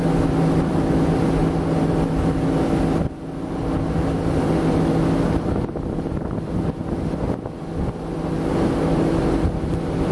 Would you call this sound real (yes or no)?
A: yes